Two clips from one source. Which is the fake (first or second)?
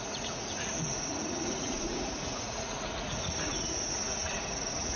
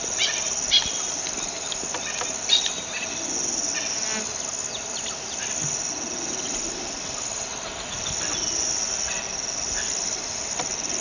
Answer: first